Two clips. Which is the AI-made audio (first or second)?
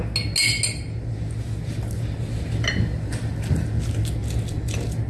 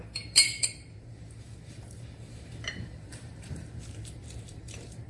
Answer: second